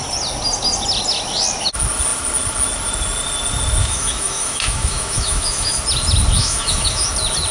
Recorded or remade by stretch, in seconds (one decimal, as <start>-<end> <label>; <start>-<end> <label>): 0.0-3.8 recorded; 3.8-5.8 remade; 5.8-6.4 recorded; 6.4-7.1 remade; 7.1-7.5 recorded